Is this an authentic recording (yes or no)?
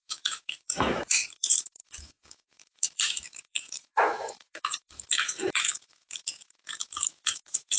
no